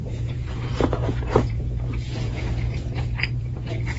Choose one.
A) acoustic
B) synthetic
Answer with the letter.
B